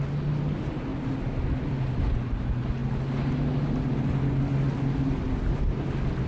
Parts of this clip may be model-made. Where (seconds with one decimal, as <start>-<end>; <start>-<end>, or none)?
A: none